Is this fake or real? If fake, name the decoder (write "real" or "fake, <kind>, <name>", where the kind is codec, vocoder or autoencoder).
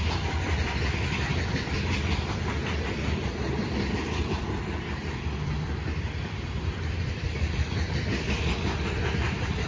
fake, vocoder, BigVGAN v2